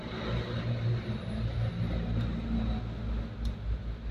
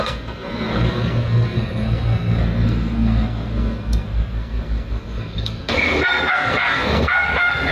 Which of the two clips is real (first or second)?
first